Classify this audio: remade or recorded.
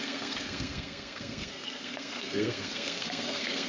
remade